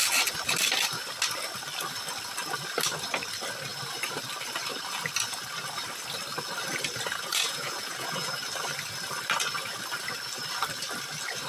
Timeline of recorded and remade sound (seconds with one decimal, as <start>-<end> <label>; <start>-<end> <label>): 0.0-7.3 recorded; 7.3-8.3 remade; 8.3-11.5 recorded